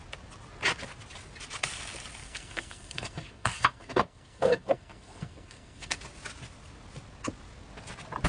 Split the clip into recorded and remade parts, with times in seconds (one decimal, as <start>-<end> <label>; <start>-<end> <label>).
0.0-2.2 recorded; 2.2-6.0 remade; 6.0-8.3 recorded